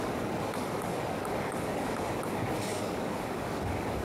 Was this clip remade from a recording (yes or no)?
yes